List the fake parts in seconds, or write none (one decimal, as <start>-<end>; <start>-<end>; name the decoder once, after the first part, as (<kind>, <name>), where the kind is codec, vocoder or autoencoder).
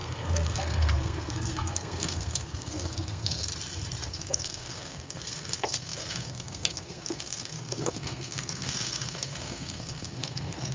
0.0-3.5 (codec, SNAC); 4.1-10.7